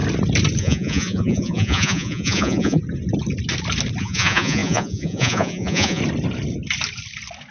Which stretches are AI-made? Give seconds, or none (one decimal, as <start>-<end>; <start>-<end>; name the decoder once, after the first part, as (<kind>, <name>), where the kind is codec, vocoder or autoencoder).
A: 0.6-2.8 (vocoder, Vocos); 4.0-6.0